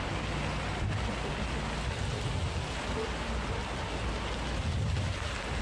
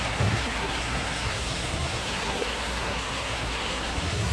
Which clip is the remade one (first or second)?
second